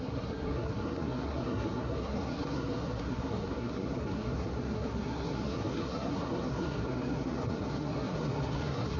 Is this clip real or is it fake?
fake